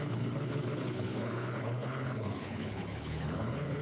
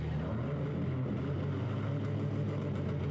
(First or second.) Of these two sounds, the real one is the second